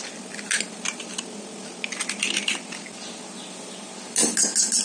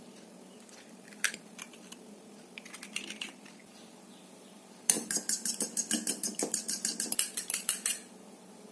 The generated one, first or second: second